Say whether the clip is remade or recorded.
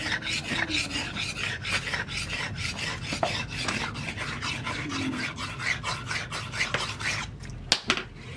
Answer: recorded